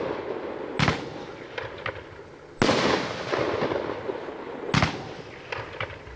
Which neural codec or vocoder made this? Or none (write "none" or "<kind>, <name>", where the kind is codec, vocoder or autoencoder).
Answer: none